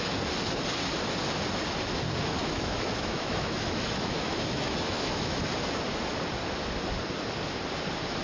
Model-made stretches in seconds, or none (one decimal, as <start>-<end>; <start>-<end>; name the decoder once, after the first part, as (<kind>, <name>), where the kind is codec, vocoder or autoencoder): 2.4-5.4 (autoencoder, DAC-VAE)